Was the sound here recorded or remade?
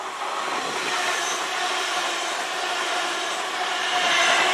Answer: recorded